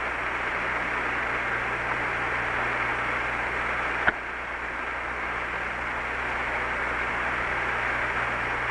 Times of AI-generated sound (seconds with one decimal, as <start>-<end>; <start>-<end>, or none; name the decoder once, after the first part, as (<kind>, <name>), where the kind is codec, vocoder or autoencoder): none